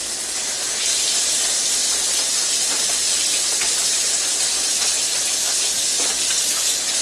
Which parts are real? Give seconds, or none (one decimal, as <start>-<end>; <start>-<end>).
0.0-7.0

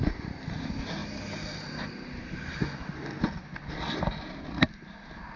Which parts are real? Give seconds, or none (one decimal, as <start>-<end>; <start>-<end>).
0.0-5.4

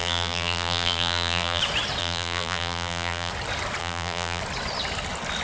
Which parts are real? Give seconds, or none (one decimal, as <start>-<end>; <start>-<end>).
1.6-2.0; 3.3-3.8; 4.4-5.4

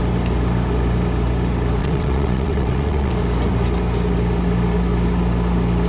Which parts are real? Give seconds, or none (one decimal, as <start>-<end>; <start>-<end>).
0.0-1.8; 3.1-5.9

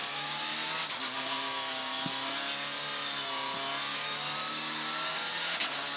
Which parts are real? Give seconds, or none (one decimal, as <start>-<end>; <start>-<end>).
0.5-1.0; 2.1-4.5

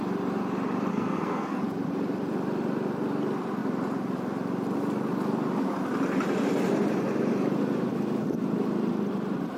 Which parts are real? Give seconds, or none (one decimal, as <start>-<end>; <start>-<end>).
0.0-0.9; 1.6-9.6

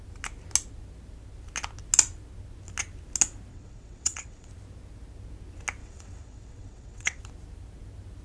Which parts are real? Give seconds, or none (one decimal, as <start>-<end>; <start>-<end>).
0.0-3.5; 4.5-5.8; 7.2-8.2

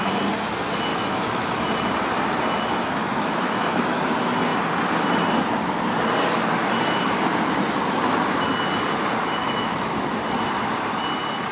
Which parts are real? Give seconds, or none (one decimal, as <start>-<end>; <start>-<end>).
0.0-0.9; 1.5-3.0; 4.0-9.4; 10.0-11.5